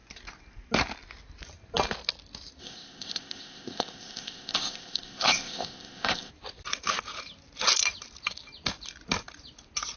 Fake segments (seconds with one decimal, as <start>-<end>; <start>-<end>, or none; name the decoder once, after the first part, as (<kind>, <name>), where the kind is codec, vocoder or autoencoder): 2.6-6.3 (codec, ZipCodec)